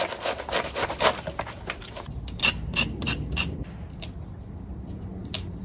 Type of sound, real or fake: real